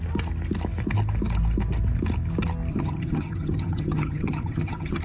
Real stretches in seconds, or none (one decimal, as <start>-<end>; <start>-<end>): 0.0-2.7